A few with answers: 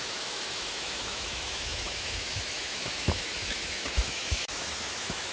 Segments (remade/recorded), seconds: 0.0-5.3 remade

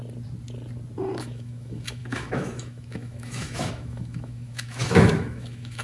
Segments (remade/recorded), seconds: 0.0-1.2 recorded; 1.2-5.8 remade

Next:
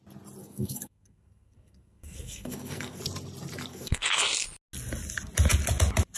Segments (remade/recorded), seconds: 0.0-0.4 recorded; 0.4-3.0 remade; 3.0-3.7 recorded; 3.7-4.2 remade; 4.2-6.2 recorded

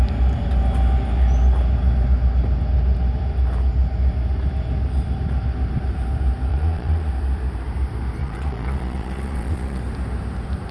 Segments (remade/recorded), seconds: 0.0-6.5 recorded; 6.5-7.1 remade; 7.1-8.2 recorded; 8.2-9.8 remade; 9.8-10.7 recorded

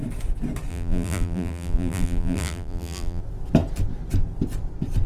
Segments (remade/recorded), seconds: 0.0-0.7 recorded; 0.7-3.2 remade; 3.2-5.1 recorded